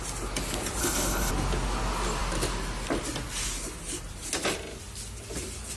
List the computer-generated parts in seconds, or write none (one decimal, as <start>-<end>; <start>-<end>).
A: 0.8-1.3

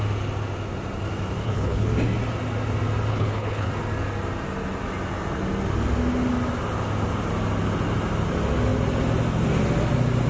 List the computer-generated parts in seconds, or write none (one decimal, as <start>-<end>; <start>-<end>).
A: 1.4-1.9; 3.1-3.7

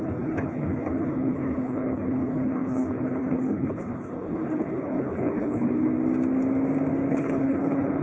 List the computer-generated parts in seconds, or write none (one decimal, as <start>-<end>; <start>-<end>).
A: 0.0-5.9; 7.1-8.0